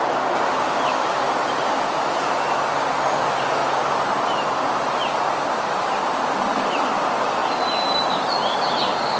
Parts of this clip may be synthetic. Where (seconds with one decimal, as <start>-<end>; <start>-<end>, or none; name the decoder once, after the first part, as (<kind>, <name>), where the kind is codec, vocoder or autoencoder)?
none